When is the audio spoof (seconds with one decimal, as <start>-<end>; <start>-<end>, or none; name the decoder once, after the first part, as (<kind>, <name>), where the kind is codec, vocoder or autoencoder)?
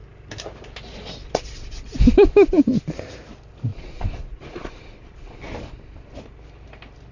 3.7-5.4 (vocoder, Vocos)